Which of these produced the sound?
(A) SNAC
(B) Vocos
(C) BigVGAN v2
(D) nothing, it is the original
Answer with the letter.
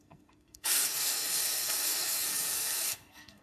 A